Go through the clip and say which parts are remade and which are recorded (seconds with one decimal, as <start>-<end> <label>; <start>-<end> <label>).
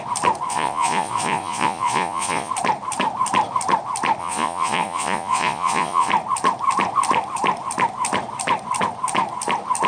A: 0.0-0.5 recorded; 0.5-2.5 remade; 2.5-4.2 recorded; 4.2-6.1 remade; 6.1-9.9 recorded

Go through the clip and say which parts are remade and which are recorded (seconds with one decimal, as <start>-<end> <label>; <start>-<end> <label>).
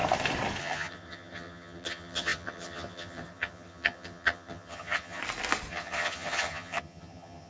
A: 0.0-0.6 recorded; 0.6-5.2 remade; 5.2-5.7 recorded; 5.7-7.5 remade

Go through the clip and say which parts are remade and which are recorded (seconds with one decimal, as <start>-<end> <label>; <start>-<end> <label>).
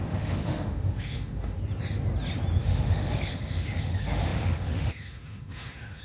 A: 0.0-1.6 remade; 1.6-2.6 recorded; 2.6-6.0 remade